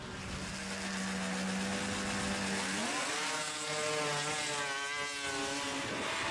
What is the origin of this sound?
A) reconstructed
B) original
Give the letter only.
B